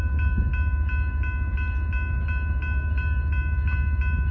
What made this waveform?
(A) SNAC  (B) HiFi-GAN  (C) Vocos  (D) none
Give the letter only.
D